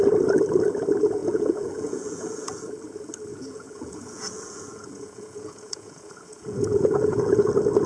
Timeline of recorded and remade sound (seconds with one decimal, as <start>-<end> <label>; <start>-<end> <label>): 0.0-1.2 recorded; 1.2-2.7 remade; 2.7-3.3 recorded; 3.3-7.5 remade; 7.5-7.9 recorded